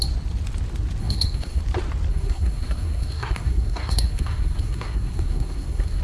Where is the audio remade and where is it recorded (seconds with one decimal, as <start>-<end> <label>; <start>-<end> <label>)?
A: 0.0-1.0 recorded; 1.0-1.6 remade; 1.6-2.1 recorded; 2.1-6.0 remade